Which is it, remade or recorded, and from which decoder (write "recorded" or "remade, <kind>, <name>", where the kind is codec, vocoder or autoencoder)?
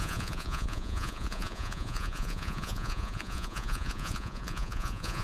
remade, vocoder, Vocos